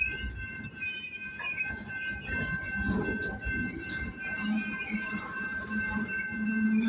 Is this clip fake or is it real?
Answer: fake